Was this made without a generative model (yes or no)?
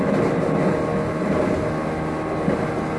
yes